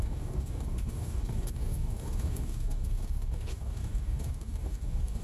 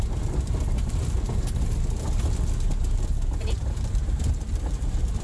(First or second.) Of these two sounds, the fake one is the first